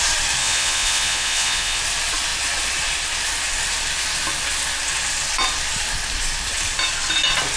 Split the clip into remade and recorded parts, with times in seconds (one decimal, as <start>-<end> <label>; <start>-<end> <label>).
0.0-0.4 recorded; 0.4-1.8 remade; 1.8-7.6 recorded